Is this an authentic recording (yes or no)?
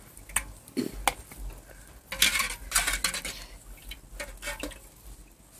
yes